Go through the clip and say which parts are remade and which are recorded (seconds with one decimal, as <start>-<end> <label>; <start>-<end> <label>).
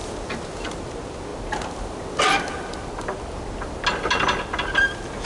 0.0-5.2 recorded